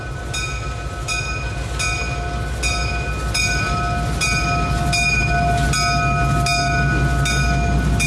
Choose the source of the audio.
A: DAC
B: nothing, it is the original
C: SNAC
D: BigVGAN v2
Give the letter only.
B